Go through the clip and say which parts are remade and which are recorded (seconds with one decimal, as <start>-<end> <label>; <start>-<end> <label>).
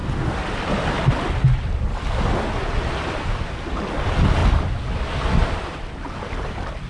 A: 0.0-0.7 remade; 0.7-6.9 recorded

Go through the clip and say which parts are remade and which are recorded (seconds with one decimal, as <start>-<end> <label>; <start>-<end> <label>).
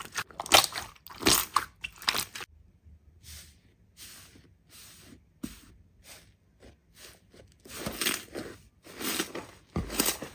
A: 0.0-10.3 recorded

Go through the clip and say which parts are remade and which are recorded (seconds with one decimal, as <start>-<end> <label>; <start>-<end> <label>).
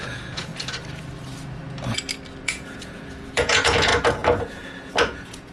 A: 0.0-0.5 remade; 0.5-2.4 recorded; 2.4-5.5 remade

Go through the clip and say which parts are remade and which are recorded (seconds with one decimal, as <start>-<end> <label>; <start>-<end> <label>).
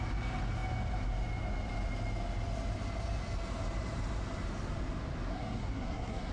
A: 0.0-5.3 recorded; 5.3-6.3 remade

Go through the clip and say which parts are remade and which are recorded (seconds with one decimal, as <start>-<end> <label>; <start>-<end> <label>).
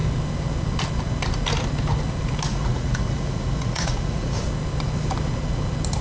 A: 0.0-2.5 recorded; 2.5-4.4 remade; 4.4-6.0 recorded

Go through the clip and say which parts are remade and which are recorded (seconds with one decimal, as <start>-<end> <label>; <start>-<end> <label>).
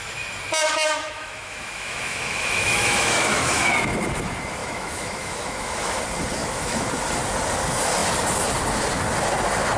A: 0.0-0.6 recorded; 0.6-3.7 remade; 3.7-4.6 recorded; 4.6-6.0 remade; 6.0-6.4 recorded; 6.4-6.9 remade; 6.9-9.8 recorded